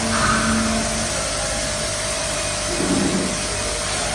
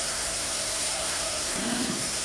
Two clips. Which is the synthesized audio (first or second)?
second